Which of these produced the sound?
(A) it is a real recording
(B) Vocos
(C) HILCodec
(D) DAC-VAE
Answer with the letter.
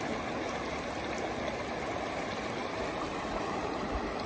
A